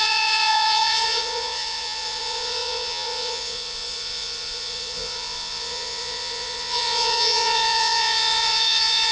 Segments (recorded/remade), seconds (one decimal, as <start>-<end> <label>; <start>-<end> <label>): 0.0-9.1 remade